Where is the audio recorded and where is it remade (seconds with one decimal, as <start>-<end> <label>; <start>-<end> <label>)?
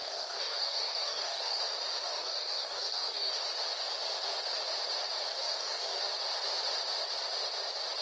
0.0-1.6 remade; 1.6-2.0 recorded; 2.0-3.3 remade; 3.3-5.3 recorded; 5.3-6.0 remade; 6.0-8.0 recorded